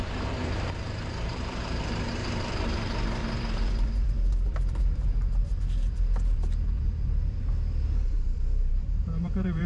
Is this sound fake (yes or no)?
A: yes